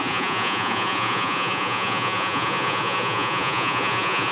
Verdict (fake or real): fake